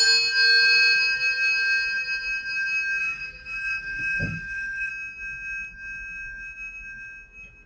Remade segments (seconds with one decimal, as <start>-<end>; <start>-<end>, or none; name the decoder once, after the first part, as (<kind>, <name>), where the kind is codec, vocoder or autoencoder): 3.0-4.9 (codec, DAC)